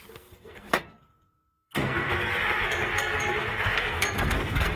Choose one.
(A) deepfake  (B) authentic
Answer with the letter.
A